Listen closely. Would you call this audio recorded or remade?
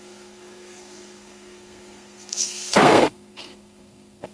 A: remade